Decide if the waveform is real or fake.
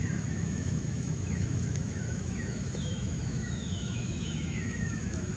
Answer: fake